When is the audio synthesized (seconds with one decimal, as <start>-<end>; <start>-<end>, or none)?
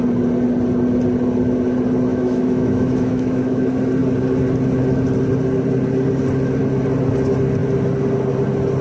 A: 2.1-3.6